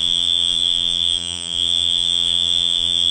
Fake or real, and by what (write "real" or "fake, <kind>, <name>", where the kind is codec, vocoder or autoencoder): fake, vocoder, BigVGAN v2